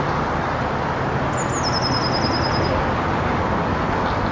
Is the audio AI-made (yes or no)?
no